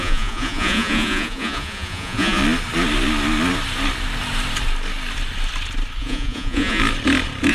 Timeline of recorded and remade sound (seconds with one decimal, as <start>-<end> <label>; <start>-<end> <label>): 0.0-2.4 remade; 2.4-6.0 recorded; 6.0-6.8 remade; 6.8-7.5 recorded